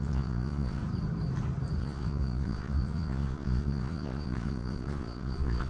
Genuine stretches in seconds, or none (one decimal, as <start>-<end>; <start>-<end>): 0.8-1.8